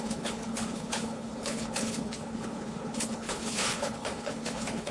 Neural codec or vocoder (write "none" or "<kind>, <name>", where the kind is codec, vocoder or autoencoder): codec, HILCodec